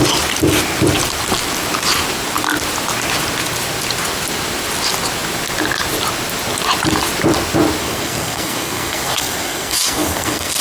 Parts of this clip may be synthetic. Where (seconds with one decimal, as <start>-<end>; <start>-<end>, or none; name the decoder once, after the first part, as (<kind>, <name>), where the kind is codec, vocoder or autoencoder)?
7.8-10.6 (codec, SNAC)